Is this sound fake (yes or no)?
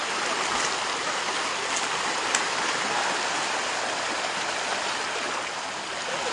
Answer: no